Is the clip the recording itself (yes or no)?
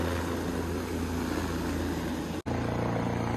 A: yes